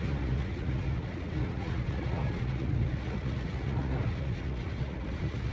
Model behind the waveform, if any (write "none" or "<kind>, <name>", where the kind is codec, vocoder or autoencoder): vocoder, Vocos